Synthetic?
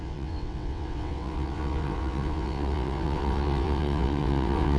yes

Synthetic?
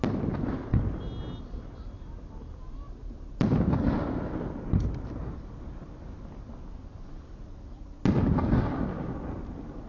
no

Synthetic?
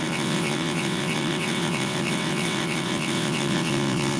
yes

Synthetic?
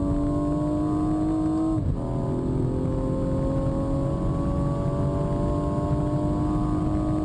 no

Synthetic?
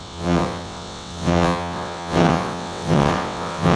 yes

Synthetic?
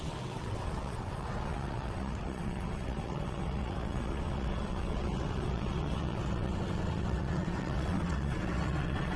yes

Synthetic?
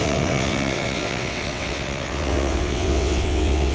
yes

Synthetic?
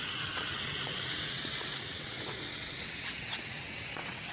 yes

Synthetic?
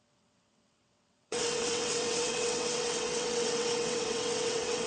yes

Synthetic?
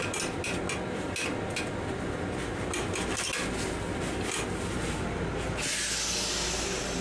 no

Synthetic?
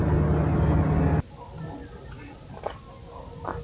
no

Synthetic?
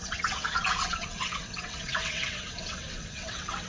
yes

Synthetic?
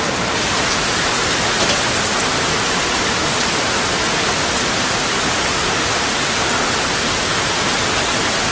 no